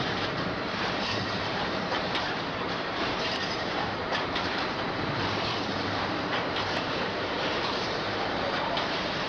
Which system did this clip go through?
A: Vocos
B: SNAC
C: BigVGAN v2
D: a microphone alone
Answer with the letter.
C